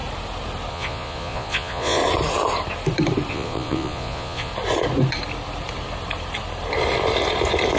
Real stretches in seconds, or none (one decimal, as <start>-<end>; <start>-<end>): 0.0-0.7; 2.0-3.3; 4.5-7.8